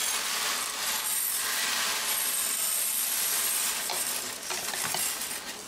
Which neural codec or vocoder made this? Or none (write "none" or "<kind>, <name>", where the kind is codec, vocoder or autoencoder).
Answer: none